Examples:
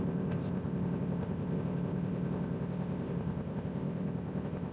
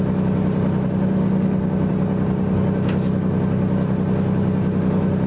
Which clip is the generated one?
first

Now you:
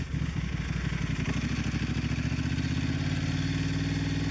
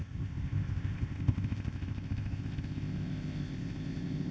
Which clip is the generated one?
second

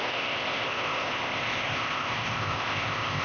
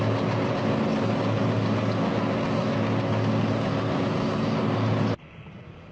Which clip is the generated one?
first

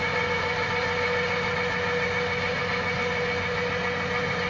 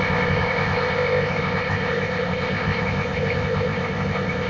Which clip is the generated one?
second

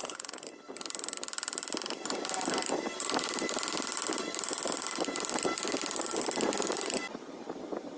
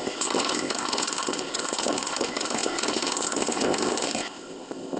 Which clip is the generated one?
second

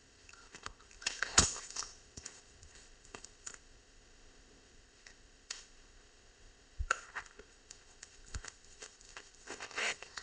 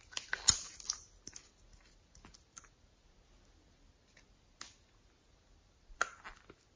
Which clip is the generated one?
first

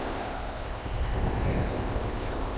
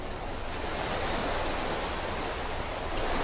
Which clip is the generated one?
first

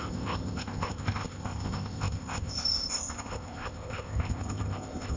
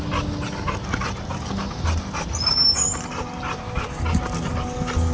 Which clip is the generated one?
first